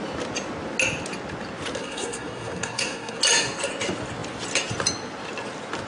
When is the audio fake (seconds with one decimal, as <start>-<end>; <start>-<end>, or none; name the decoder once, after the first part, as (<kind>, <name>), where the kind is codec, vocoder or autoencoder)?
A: 1.8-3.2 (codec, SNAC)